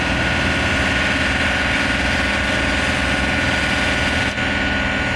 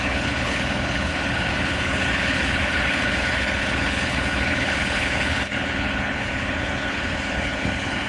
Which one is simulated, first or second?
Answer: second